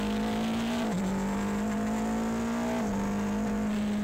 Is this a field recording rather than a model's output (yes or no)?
yes